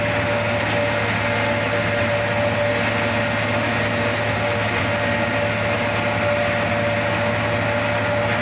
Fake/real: real